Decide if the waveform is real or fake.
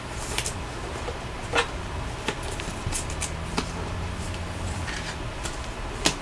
real